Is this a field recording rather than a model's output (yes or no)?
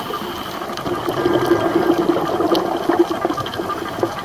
yes